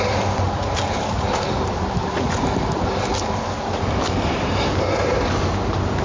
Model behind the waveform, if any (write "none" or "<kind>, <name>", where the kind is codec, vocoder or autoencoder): none